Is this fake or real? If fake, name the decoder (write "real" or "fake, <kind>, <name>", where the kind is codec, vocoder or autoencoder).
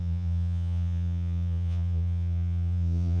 fake, vocoder, Vocos